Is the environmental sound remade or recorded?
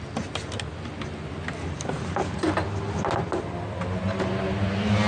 recorded